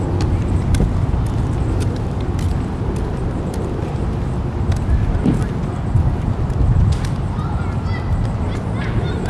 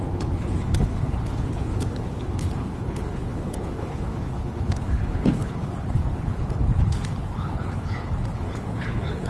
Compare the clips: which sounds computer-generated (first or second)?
second